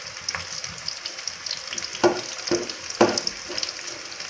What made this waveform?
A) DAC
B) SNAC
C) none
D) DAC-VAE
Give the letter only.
C